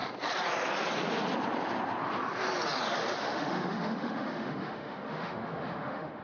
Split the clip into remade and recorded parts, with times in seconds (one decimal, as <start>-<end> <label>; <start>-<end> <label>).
0.0-3.2 recorded; 3.2-6.2 remade